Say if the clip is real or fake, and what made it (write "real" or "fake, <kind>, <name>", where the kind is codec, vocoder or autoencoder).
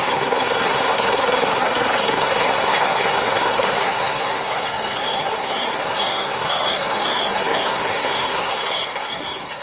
fake, codec, SNAC